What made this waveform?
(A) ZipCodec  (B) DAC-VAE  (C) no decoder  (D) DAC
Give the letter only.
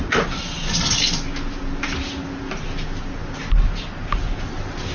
C